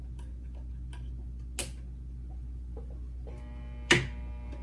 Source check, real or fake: real